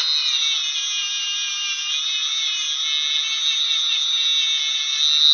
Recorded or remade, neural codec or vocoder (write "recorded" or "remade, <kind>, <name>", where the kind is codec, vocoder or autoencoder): recorded